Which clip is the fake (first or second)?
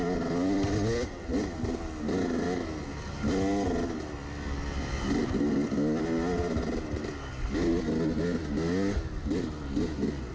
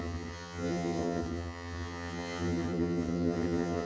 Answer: second